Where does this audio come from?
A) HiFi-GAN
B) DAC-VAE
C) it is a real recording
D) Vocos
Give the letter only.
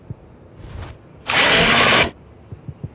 C